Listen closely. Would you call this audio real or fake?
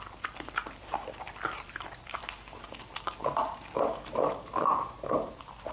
fake